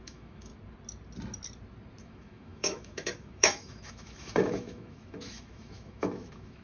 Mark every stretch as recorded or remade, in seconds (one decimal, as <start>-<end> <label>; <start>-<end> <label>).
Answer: 0.0-0.5 remade; 0.5-2.0 recorded; 2.0-6.6 remade